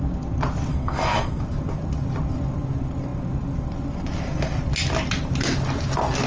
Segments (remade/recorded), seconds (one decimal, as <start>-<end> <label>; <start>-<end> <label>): 0.0-0.7 recorded; 0.7-1.4 remade; 1.4-6.3 recorded